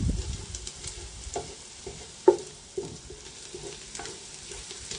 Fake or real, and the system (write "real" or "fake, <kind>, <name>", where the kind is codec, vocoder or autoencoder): real